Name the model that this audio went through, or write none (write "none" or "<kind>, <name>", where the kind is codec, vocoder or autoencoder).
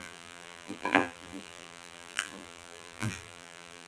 vocoder, BigVGAN v2